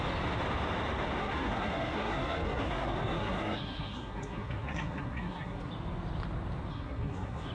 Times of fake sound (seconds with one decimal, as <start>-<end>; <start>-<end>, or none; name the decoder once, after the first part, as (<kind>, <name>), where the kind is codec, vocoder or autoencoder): 1.2-5.7 (codec, SNAC); 6.7-7.5